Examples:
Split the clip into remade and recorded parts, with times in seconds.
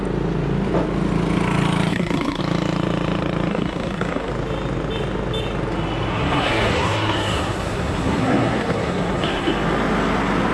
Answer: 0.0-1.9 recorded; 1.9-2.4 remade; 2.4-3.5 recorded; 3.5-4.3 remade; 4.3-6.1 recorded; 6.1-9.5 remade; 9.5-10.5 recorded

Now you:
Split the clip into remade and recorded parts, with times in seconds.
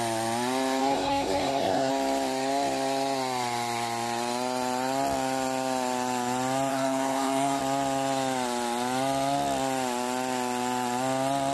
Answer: 0.0-0.8 recorded; 0.8-1.9 remade; 1.9-6.7 recorded; 6.7-7.6 remade; 7.6-11.5 recorded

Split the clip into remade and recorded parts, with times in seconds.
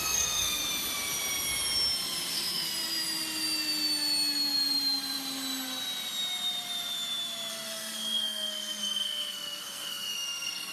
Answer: 0.0-0.6 remade; 0.6-2.3 recorded; 2.3-2.7 remade; 2.7-7.5 recorded; 7.5-10.7 remade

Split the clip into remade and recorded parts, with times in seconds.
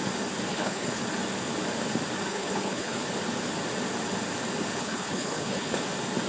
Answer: 0.0-0.5 recorded; 0.5-1.0 remade; 1.0-2.3 recorded; 2.3-3.0 remade; 3.0-4.7 recorded; 4.7-5.8 remade; 5.8-6.3 recorded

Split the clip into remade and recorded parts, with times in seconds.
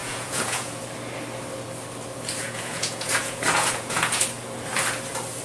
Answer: 0.0-0.8 remade; 0.8-2.4 recorded; 2.4-4.2 remade; 4.2-5.4 recorded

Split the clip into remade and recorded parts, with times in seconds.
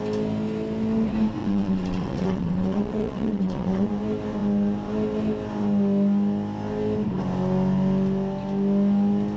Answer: 0.0-1.4 recorded; 1.4-3.9 remade; 3.9-9.4 recorded